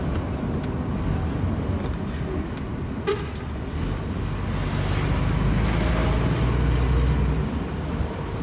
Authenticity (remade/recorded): recorded